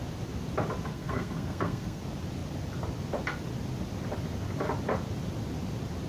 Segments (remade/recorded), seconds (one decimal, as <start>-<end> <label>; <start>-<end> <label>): 0.0-0.9 recorded; 0.9-2.0 remade; 2.0-6.1 recorded